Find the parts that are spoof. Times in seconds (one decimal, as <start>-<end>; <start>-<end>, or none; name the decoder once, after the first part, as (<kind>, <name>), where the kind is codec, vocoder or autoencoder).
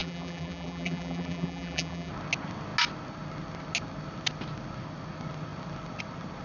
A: 0.0-2.1 (vocoder, BigVGAN v2)